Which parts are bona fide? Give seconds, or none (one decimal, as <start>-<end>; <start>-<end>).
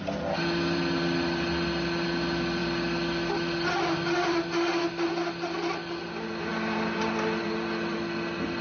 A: 0.0-8.6